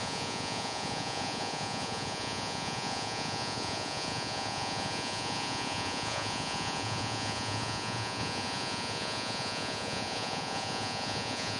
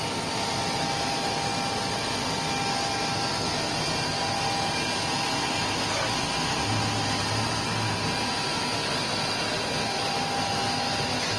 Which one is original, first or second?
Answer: second